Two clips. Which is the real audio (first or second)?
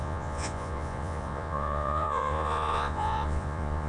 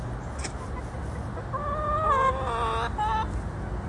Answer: second